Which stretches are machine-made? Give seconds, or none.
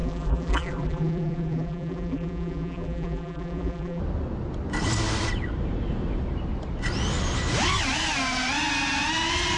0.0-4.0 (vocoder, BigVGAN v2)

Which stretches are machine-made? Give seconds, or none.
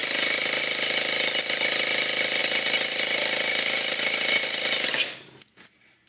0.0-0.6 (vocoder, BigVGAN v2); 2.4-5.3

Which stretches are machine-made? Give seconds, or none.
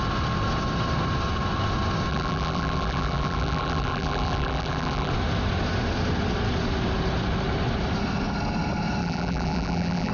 2.1-5.1 (vocoder, BigVGAN v2); 9.0-10.1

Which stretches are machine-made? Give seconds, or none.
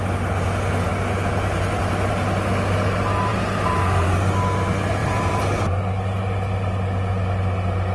3.3-4.1 (vocoder, BigVGAN v2); 5.0-5.8